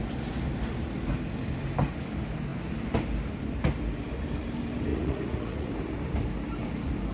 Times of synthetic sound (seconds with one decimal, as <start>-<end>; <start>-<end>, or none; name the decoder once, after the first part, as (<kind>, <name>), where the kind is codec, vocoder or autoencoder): 4.9-5.7 (vocoder, Vocos)